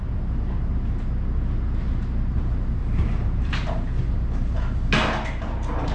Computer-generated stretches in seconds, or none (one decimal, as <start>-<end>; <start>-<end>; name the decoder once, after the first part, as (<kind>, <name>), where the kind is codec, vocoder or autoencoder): 2.8-3.5 (vocoder, BigVGAN v2)